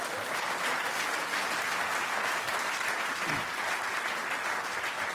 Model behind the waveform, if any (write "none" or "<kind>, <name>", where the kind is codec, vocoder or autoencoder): none